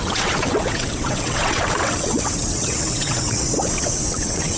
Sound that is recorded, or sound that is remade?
remade